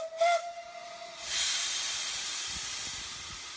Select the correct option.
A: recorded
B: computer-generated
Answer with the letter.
A